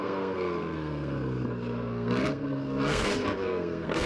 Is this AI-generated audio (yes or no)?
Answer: yes